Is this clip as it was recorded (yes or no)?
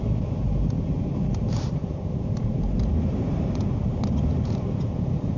no